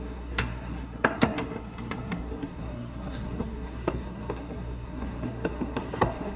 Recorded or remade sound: remade